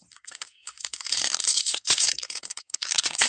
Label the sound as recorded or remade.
remade